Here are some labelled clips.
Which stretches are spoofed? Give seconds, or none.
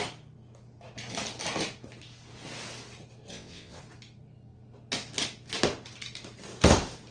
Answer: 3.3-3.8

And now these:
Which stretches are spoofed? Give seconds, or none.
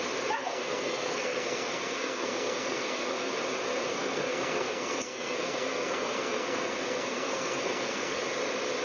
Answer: 0.4-3.3; 3.9-8.2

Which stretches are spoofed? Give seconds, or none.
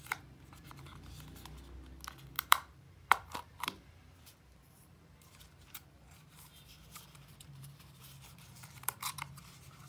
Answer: 0.0-0.9; 2.3-4.3; 4.8-9.9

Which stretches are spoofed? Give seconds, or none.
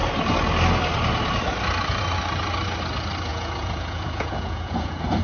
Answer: 3.3-5.2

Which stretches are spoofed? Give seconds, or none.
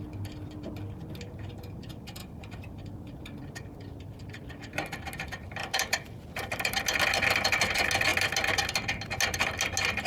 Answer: 2.2-4.5; 5.6-6.8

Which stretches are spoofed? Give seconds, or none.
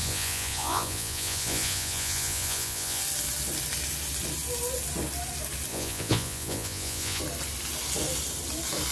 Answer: 0.0-3.0; 5.7-7.2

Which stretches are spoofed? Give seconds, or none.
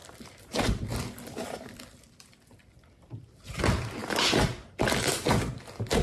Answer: 0.0-3.6; 4.0-5.2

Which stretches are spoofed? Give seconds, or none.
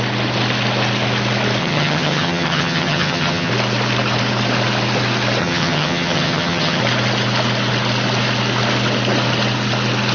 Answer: 1.6-3.5; 5.4-6.8